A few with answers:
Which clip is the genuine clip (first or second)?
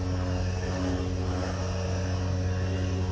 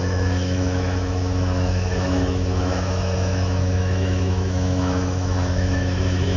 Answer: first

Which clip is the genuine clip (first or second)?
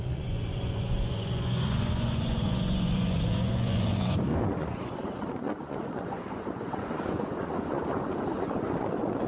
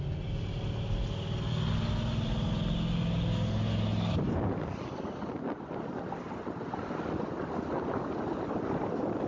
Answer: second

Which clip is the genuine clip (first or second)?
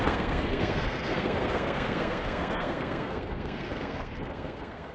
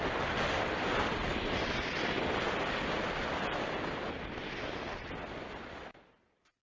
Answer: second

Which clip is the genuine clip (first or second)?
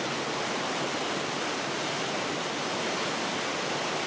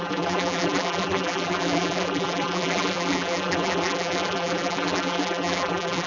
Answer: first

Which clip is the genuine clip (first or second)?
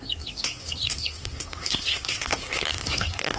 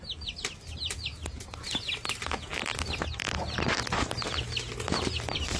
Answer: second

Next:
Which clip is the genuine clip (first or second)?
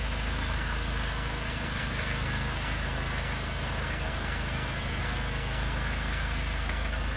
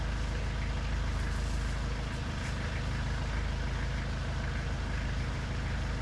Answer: second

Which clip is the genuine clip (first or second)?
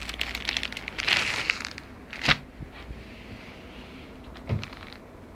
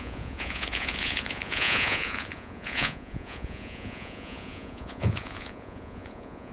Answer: first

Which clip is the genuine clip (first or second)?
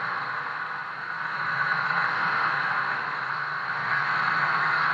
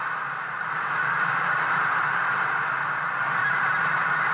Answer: second